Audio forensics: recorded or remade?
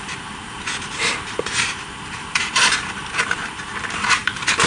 remade